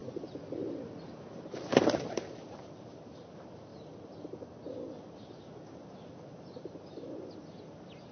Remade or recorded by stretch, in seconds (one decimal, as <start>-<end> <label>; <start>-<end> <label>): 0.0-8.1 recorded